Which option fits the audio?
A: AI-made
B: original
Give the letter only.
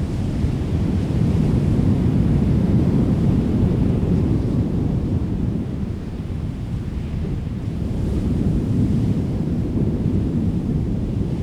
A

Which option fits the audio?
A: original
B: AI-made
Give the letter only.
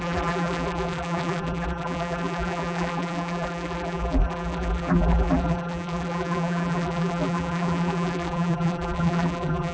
B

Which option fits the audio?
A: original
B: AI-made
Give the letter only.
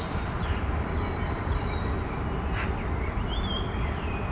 B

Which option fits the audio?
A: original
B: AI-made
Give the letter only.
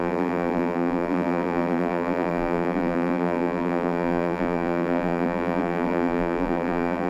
B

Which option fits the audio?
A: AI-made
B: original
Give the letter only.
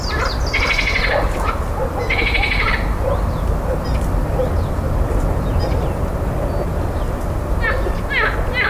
B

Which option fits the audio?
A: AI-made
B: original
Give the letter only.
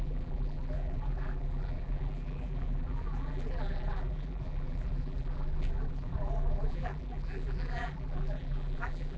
A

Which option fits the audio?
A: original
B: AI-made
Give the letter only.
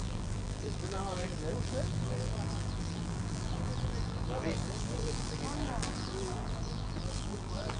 B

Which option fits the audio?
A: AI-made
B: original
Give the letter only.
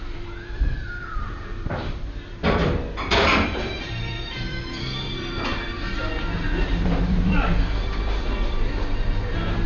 A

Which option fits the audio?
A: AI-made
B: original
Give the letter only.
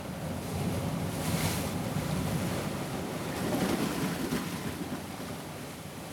B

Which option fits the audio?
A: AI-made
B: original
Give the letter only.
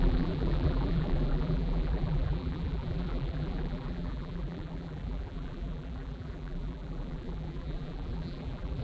A